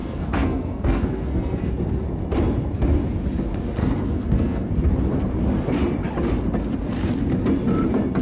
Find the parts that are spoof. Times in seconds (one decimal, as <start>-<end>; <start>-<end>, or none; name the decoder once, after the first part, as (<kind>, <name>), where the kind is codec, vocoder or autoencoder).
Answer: 0.0-1.7 (codec, SNAC); 3.8-4.7